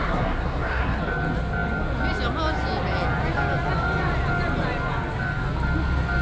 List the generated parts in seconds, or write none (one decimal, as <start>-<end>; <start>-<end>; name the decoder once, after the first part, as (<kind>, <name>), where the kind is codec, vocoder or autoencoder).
0.0-1.0 (codec, SNAC)